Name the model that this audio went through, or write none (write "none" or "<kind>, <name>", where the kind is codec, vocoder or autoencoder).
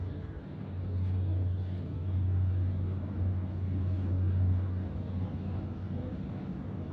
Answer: codec, DAC